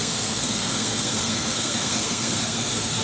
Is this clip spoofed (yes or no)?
yes